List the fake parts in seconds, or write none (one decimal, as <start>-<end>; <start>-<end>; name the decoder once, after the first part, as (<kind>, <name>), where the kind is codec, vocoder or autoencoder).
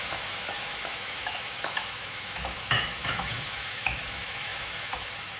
0.0-5.4 (autoencoder, DAC-VAE)